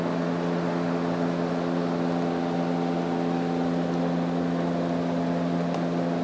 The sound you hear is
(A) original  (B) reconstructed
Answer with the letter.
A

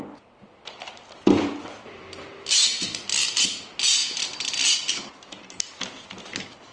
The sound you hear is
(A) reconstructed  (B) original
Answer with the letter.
B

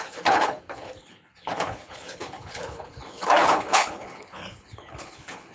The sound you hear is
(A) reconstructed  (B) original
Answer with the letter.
A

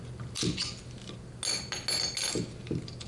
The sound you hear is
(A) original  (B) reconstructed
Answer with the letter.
A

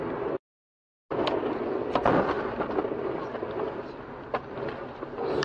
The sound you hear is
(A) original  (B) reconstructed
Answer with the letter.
A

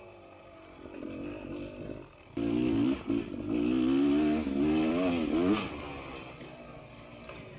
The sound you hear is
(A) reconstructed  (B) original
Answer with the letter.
B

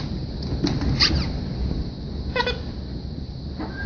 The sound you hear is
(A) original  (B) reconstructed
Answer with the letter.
A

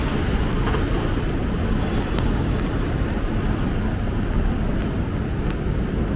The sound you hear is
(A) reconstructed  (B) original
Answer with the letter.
B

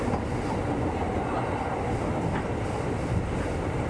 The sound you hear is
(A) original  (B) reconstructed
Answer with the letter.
A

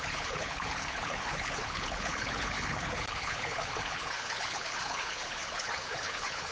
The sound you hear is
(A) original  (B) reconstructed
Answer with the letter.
B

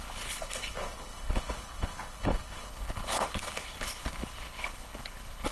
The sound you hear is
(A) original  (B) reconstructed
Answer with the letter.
B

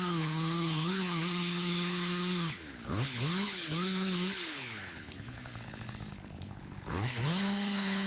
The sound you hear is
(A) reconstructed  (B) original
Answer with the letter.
A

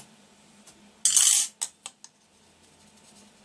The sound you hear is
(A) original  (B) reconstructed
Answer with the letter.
A